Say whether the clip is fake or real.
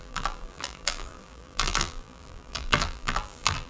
fake